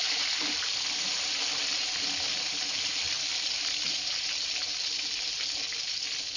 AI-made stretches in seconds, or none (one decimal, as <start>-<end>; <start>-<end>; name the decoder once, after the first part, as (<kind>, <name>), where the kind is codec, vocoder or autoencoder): none